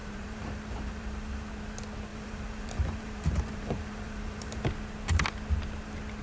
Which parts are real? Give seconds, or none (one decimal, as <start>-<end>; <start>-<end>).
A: 1.5-2.1; 4.6-6.2